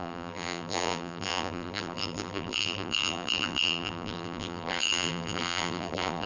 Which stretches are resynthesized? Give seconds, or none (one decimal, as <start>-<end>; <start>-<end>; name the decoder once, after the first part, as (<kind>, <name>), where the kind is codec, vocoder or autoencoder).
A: 0.0-6.3 (vocoder, BigVGAN v2)